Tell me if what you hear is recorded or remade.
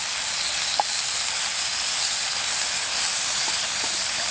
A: recorded